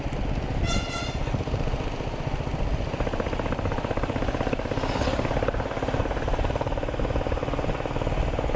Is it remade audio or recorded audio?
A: recorded